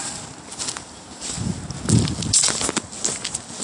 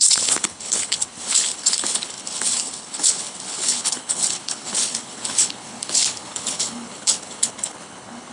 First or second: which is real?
first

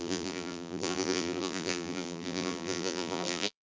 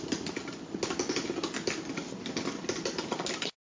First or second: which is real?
second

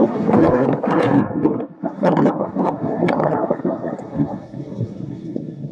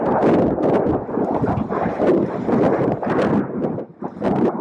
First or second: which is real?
second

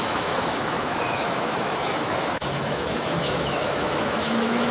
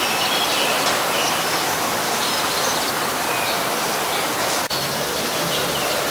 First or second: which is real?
second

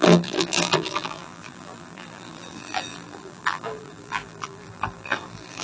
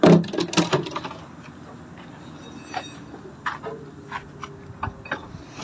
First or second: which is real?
second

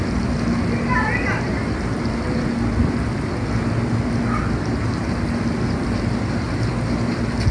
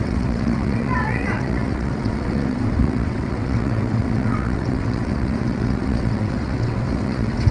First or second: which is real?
first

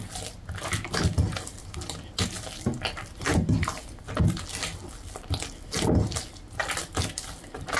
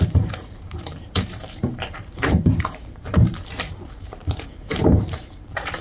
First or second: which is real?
first